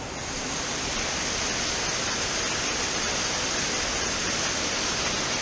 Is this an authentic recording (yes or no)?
yes